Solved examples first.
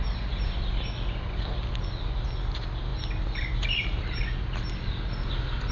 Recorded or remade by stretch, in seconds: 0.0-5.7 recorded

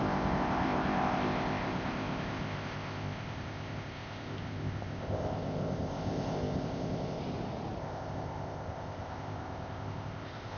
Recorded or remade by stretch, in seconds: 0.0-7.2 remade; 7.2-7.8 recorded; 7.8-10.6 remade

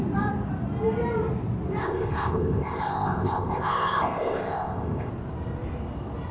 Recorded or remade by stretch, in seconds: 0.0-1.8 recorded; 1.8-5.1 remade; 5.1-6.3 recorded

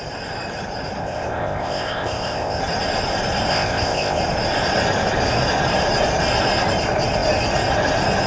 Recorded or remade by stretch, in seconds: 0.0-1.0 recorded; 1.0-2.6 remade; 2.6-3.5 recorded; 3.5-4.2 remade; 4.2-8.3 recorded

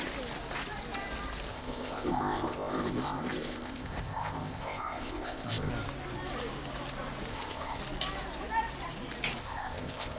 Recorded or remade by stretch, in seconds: 0.0-1.5 recorded; 1.5-5.7 remade; 5.7-7.3 recorded; 7.3-7.8 remade; 7.8-9.4 recorded; 9.4-10.2 remade